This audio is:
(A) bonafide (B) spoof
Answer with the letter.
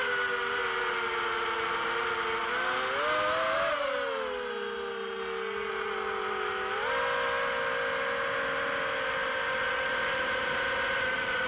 A